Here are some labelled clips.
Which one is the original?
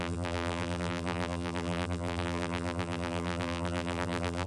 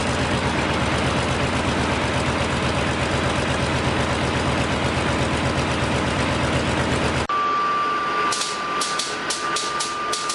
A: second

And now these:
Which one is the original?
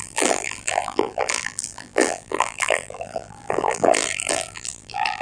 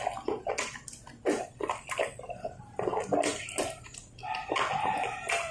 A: second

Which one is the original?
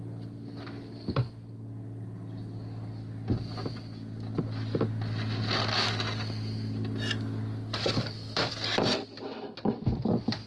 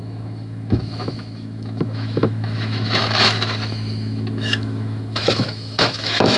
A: first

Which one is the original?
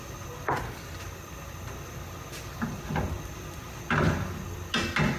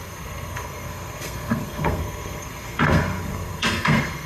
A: first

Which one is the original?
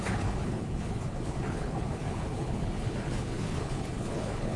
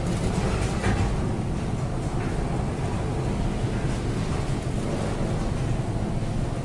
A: second